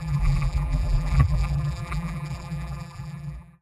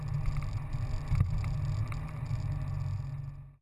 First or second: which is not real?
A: first